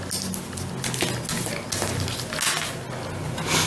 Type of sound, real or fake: real